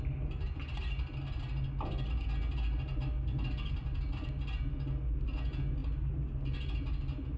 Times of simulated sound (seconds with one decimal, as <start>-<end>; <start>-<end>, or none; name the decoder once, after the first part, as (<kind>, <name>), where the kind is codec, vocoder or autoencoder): none